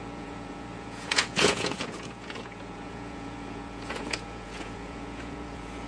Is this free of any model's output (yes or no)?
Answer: no